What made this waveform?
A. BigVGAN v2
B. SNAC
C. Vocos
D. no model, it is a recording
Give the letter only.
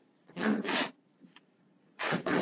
C